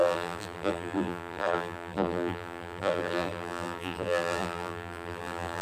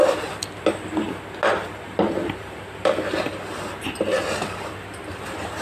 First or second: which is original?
second